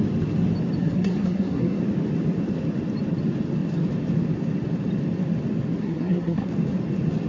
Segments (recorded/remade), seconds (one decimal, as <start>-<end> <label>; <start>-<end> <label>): 0.0-0.8 recorded; 0.8-1.8 remade; 1.8-5.8 recorded; 5.8-6.5 remade; 6.5-7.3 recorded